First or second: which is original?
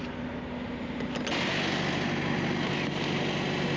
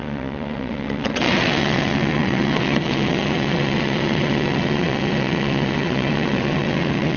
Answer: first